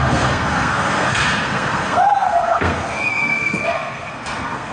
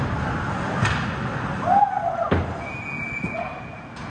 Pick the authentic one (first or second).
second